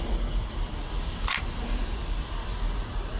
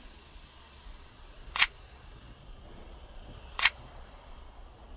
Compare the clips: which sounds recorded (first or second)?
first